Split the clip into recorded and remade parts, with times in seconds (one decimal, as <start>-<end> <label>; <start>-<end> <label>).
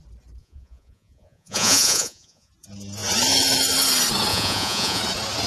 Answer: 0.0-0.4 recorded; 0.4-2.5 remade; 2.5-4.3 recorded; 4.3-5.0 remade; 5.0-5.5 recorded